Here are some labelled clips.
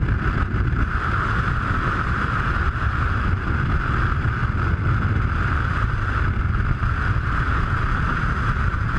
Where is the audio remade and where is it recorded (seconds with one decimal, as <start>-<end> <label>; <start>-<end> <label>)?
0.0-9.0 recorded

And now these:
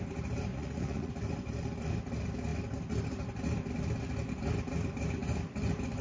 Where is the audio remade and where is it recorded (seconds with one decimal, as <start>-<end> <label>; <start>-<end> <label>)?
0.0-0.5 recorded; 0.5-1.1 remade; 1.1-6.0 recorded

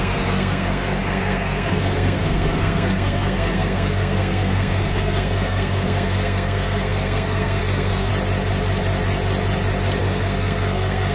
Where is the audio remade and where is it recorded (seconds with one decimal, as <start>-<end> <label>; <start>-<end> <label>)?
0.0-8.1 remade; 8.1-10.0 recorded; 10.0-11.1 remade

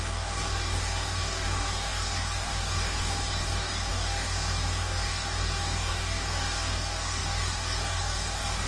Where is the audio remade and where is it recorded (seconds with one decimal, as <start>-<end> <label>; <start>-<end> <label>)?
0.0-8.7 remade

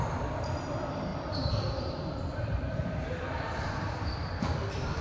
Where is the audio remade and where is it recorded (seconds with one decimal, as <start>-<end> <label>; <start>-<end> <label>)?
0.0-5.0 remade

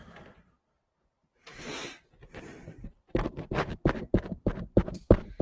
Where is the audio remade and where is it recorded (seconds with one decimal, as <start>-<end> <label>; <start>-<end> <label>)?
0.0-1.8 remade; 1.8-2.4 recorded; 2.4-5.4 remade

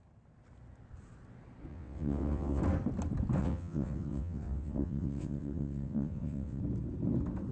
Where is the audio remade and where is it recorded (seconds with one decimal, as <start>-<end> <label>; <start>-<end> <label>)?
0.0-1.7 recorded; 1.7-2.6 remade; 2.6-3.4 recorded; 3.4-6.6 remade; 6.6-7.5 recorded

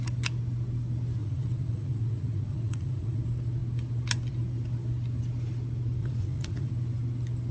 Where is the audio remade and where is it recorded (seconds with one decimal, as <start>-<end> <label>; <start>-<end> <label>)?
0.0-1.2 recorded; 1.2-3.2 remade; 3.2-6.0 recorded; 6.0-6.7 remade; 6.7-7.5 recorded